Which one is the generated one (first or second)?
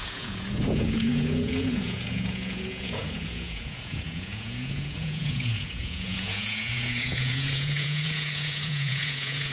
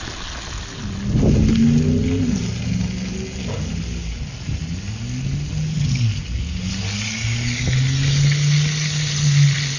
first